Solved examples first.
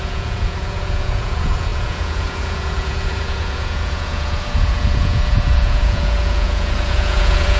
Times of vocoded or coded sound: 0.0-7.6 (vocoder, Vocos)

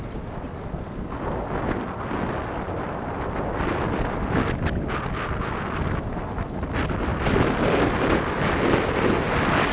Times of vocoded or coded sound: none

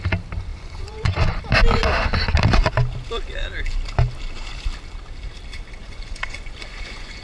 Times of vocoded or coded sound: 0.5-1.4 (vocoder, Vocos); 5.8-7.2

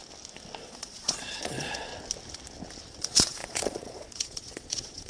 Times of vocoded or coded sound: 0.6-1.9 (vocoder, Vocos); 2.9-5.1

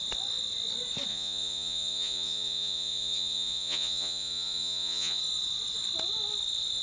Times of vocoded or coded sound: 1.1-5.2 (vocoder, Vocos)

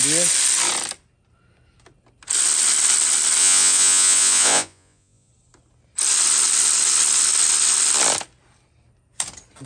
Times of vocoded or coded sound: 3.4-5.3 (vocoder, Vocos)